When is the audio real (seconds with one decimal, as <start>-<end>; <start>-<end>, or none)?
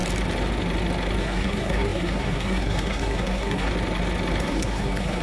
0.0-1.2; 3.7-4.4